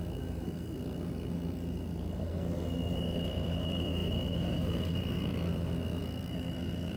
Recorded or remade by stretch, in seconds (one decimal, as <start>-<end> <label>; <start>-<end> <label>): 0.0-7.0 remade